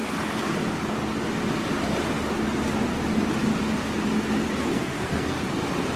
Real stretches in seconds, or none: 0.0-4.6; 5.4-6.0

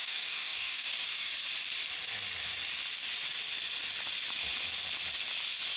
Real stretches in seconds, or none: 1.3-5.8

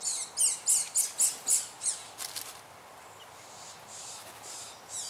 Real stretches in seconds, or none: 0.0-1.5; 3.5-5.1

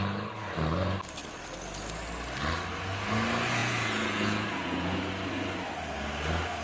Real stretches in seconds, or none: 0.0-3.6; 5.0-6.6

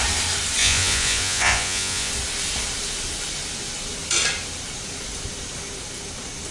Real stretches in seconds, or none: 0.0-0.6; 2.1-6.5

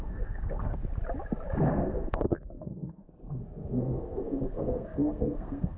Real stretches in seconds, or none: 0.8-1.7